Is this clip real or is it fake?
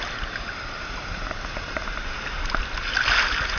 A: real